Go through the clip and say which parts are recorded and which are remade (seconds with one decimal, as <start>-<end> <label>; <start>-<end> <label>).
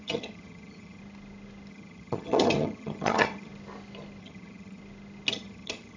0.0-1.0 remade; 1.0-1.7 recorded; 1.7-3.5 remade; 3.5-4.2 recorded; 4.2-4.8 remade; 4.8-5.3 recorded; 5.3-6.0 remade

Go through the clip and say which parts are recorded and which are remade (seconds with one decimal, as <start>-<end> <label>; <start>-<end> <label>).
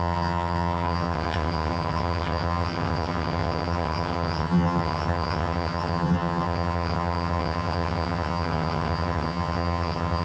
0.0-10.2 remade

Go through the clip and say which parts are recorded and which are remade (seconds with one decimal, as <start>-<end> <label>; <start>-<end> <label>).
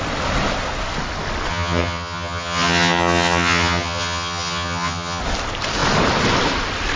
0.0-1.5 recorded; 1.5-5.2 remade; 5.2-7.0 recorded